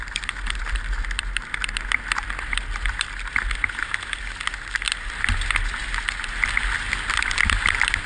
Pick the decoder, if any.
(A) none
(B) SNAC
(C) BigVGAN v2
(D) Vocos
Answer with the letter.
A